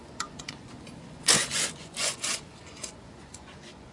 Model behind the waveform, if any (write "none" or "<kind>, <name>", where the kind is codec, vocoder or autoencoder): vocoder, Vocos